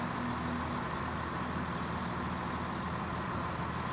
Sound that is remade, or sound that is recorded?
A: recorded